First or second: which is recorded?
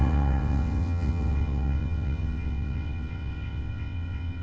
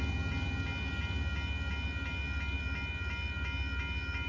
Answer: second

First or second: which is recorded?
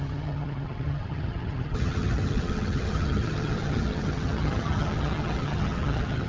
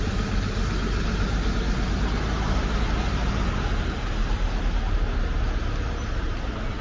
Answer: second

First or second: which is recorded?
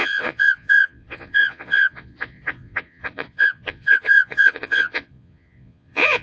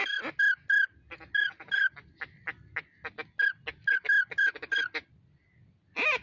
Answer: second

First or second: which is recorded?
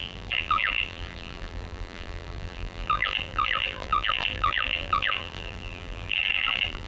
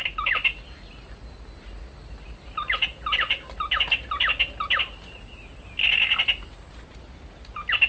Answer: second